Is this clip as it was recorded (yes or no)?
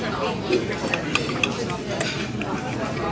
yes